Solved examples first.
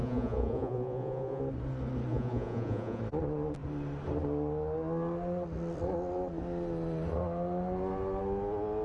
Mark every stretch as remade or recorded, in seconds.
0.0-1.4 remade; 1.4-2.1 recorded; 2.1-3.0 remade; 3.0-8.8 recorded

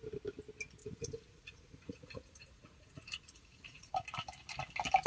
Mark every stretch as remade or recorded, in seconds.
0.0-0.8 recorded; 0.8-3.9 remade; 3.9-5.1 recorded